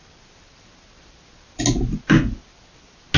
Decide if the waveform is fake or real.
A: real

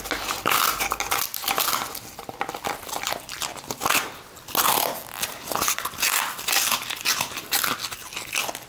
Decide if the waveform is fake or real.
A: real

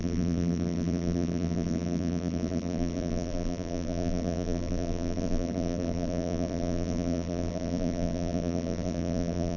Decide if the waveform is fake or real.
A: fake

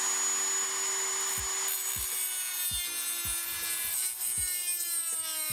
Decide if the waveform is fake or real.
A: real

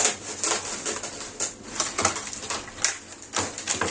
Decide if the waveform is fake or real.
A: real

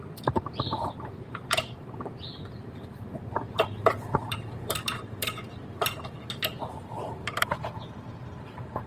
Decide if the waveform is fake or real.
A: fake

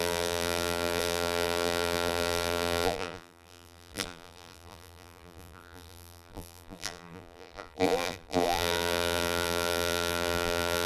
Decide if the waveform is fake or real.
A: fake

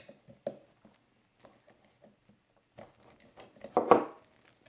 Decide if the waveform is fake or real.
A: real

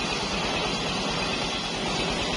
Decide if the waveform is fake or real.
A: real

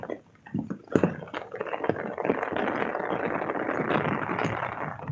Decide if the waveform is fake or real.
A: real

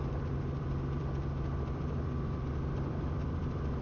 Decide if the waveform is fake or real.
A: fake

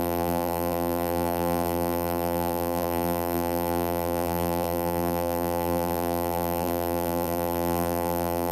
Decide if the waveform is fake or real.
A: fake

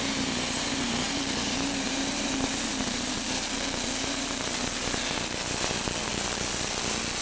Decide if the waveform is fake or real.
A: real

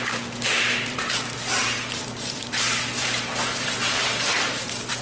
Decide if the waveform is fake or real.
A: fake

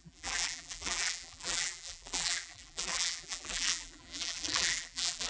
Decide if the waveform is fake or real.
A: fake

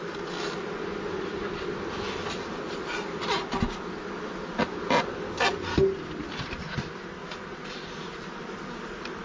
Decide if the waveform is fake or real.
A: real